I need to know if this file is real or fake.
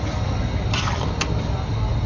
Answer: real